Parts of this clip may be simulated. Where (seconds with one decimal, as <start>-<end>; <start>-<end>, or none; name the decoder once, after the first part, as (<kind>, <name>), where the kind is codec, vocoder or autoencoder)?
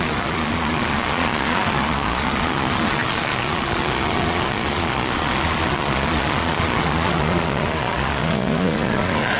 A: 0.0-9.4 (vocoder, Vocos)